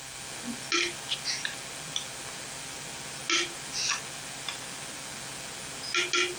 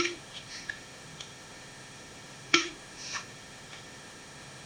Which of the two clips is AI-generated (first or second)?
second